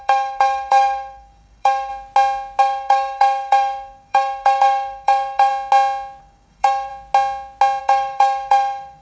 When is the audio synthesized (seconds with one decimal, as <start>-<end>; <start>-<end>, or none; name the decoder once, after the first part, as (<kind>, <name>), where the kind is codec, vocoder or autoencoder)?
0.0-1.9 (codec, DAC); 2.6-5.5; 6.2-6.9; 7.8-9.0